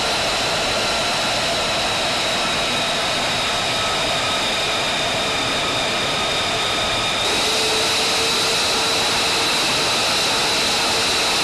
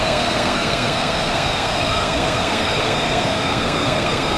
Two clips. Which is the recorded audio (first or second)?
first